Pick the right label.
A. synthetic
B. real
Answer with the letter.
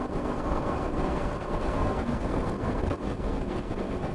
A